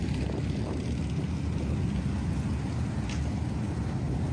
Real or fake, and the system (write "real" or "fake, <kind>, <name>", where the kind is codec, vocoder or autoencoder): real